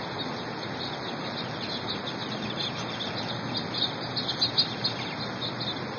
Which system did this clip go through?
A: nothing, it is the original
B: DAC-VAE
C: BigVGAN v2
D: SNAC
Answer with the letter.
A